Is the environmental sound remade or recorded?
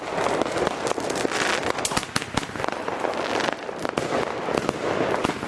recorded